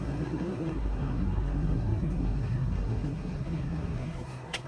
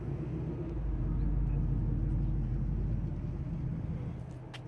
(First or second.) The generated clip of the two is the first